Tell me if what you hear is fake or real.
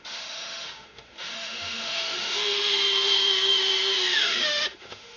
fake